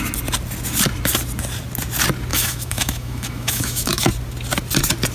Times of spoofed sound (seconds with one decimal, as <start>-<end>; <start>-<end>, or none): 2.3-4.1